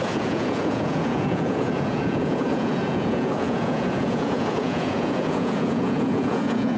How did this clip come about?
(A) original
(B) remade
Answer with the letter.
B